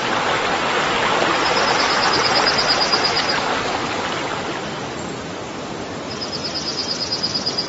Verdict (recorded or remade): recorded